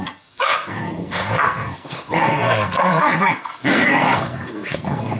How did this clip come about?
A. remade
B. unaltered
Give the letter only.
A